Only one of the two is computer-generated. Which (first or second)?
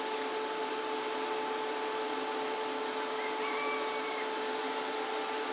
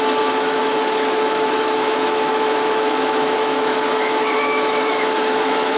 second